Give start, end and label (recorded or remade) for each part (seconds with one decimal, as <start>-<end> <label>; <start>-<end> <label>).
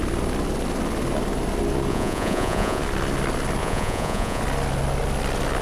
0.0-1.9 recorded; 1.9-2.8 remade; 2.8-3.6 recorded; 3.6-4.4 remade; 4.4-5.6 recorded